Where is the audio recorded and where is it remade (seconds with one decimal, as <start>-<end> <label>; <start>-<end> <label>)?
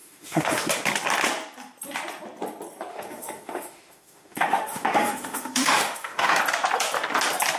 0.0-0.7 remade; 0.7-2.9 recorded; 2.9-6.4 remade; 6.4-7.6 recorded